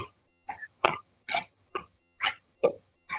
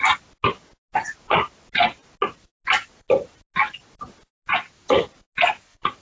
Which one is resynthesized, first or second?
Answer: first